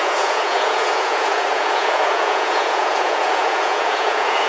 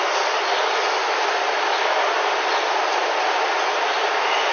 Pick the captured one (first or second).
second